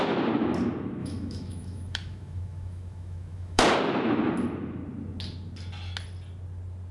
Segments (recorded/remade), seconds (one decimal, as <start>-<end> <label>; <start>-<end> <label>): 0.0-1.0 recorded; 1.0-3.6 remade; 3.6-6.9 recorded